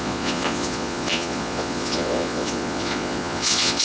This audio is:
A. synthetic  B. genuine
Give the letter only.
A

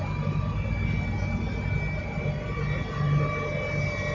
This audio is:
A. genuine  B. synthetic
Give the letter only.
A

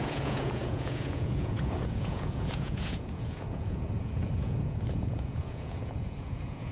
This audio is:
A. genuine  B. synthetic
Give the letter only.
B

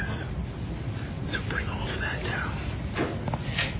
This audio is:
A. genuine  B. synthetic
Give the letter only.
A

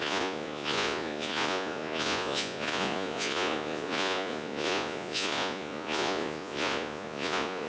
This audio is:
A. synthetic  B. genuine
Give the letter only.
A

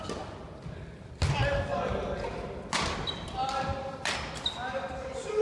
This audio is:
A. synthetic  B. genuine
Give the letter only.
B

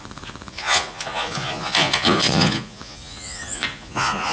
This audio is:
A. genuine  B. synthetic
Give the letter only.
B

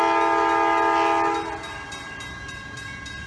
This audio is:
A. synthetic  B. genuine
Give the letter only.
B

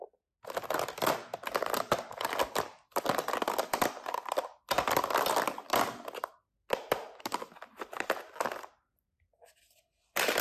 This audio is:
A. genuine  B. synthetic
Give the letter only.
A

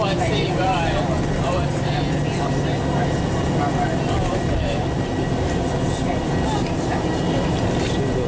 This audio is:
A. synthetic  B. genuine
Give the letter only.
B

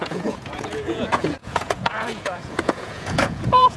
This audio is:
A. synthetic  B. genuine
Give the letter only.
A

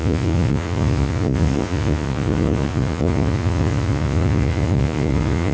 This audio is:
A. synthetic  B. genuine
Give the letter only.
A